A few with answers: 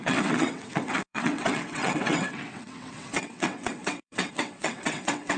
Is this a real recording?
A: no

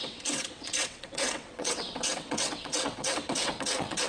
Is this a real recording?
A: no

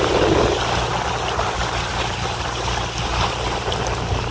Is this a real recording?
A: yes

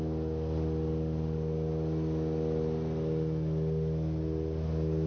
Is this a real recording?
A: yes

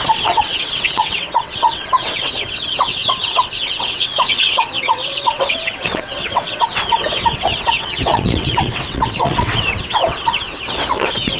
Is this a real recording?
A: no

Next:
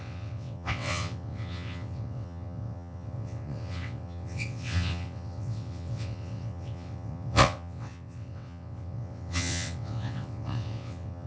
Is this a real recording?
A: no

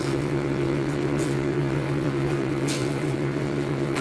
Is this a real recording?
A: no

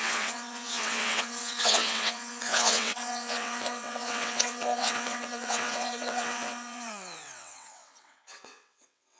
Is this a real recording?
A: no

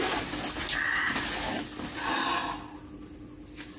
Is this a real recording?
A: yes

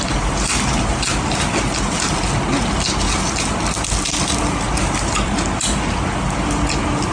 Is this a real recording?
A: yes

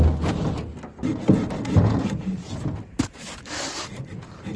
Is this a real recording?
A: yes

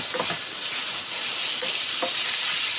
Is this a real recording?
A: yes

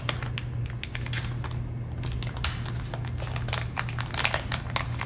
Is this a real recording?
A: yes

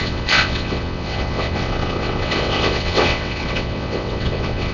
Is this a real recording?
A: no